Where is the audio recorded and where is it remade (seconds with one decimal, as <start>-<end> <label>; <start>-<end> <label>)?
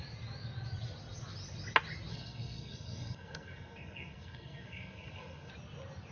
0.0-2.1 recorded; 2.1-5.5 remade; 5.5-6.1 recorded